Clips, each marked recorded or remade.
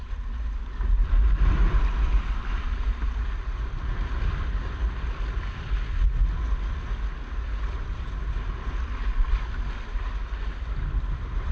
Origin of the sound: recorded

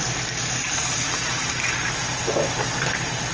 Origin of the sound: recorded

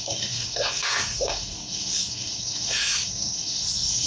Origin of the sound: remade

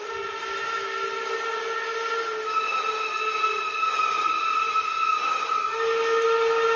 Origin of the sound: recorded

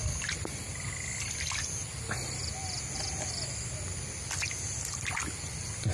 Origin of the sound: recorded